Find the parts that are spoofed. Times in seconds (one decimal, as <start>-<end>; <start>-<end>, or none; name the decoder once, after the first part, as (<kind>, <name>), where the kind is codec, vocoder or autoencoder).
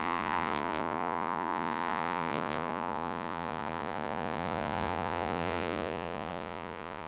0.0-7.1 (vocoder, Vocos)